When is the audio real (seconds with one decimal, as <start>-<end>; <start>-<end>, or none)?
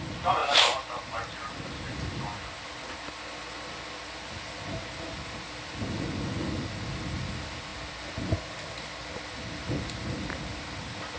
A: 0.0-11.2